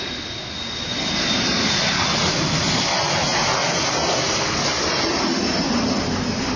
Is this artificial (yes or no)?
no